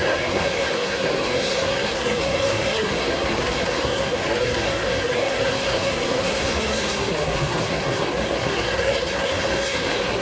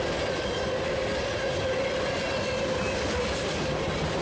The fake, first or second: first